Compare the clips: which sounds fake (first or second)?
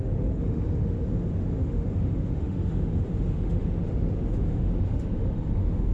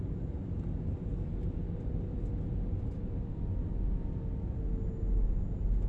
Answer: first